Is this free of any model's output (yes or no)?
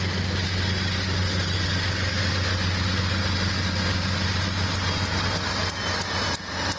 yes